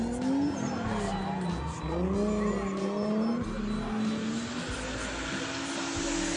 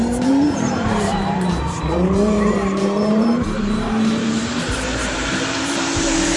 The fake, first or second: second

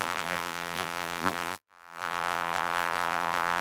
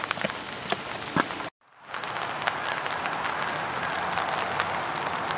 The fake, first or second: first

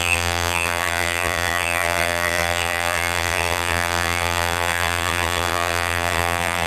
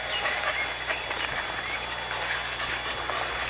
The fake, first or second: first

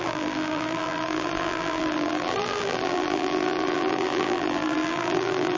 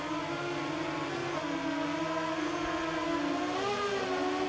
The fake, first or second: first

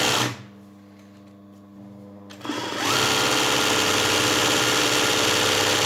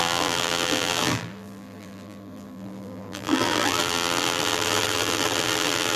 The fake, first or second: second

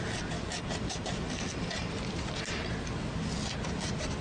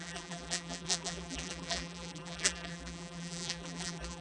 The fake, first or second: second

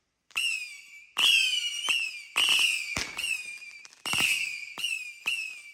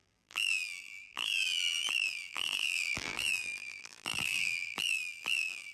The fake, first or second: second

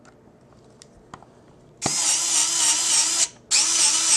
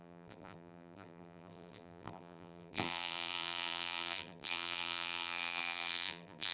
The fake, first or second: second